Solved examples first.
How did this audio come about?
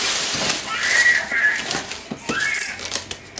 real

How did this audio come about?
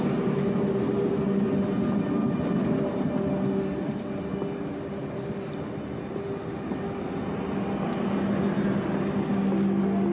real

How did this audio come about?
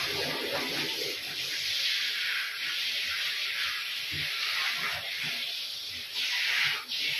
real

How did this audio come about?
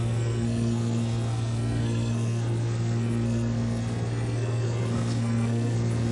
fake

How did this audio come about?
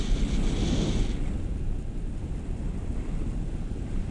real